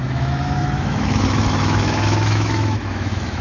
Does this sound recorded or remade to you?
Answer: remade